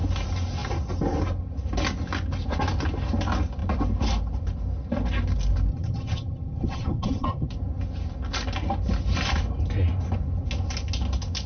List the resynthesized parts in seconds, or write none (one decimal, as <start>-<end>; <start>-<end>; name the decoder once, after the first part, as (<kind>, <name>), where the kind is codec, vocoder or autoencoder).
5.7-7.5 (vocoder, HiFi-GAN)

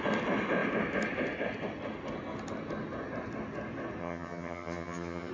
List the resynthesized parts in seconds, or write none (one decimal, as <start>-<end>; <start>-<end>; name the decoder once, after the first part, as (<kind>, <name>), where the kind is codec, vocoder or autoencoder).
4.0-5.3 (vocoder, HiFi-GAN)

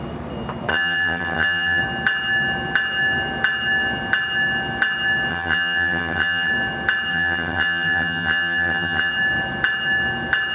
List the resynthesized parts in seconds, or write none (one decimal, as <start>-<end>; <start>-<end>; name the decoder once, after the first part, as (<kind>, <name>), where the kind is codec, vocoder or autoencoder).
0.7-1.8 (vocoder, HiFi-GAN); 5.3-6.5; 7.1-9.1